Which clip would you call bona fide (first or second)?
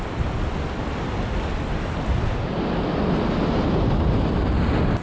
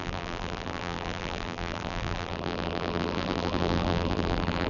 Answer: first